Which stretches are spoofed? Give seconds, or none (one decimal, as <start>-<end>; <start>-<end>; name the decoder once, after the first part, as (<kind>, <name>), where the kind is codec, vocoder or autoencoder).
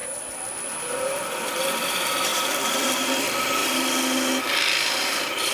0.0-3.6 (vocoder, BigVGAN v2); 4.4-5.5